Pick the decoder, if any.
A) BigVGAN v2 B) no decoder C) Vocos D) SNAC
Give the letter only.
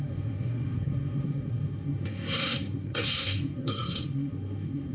D